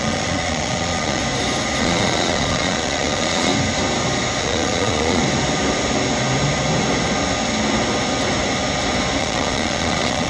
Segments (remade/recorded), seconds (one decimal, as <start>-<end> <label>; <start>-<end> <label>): 0.0-1.2 remade; 1.2-1.8 recorded; 1.8-3.5 remade; 3.5-4.4 recorded; 4.4-5.2 remade; 5.2-9.2 recorded; 9.2-10.3 remade